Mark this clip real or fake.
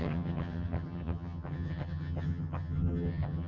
fake